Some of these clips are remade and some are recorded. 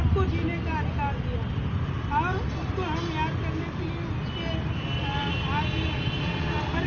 recorded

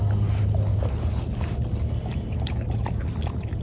recorded